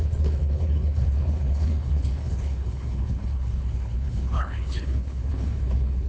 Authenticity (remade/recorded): remade